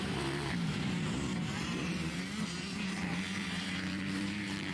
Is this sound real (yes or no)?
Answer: no